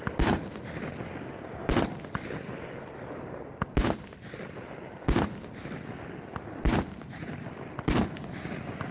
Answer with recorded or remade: recorded